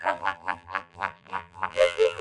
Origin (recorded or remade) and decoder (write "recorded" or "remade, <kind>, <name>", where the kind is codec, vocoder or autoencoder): remade, vocoder, BigVGAN v2